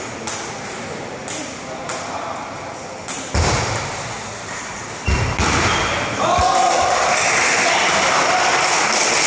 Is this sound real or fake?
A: real